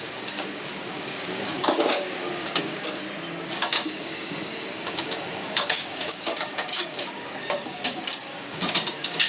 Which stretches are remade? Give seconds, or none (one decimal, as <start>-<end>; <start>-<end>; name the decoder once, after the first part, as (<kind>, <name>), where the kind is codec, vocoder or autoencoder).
0.0-3.0 (codec, DAC); 3.5-9.3